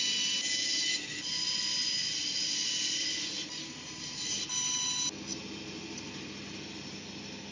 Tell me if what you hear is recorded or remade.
recorded